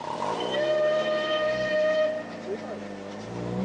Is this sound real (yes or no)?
yes